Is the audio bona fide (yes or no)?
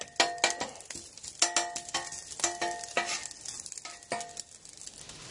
yes